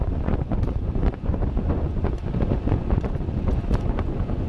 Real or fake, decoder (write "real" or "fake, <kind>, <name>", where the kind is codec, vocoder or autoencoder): fake, vocoder, Vocos